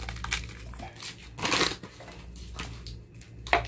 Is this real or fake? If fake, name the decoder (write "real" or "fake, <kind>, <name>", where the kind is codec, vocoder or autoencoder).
real